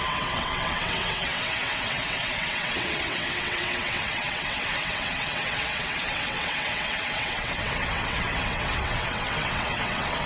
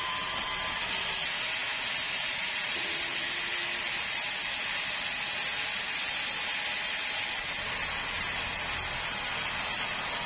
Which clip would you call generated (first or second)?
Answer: first